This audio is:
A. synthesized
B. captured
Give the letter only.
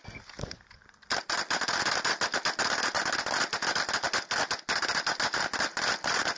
B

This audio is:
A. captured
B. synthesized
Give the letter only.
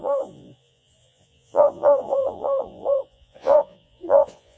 B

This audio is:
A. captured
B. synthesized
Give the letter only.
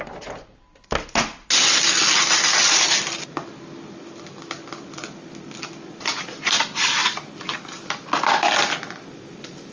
A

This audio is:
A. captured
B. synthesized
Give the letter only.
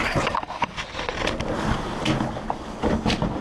A